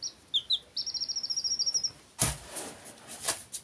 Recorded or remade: recorded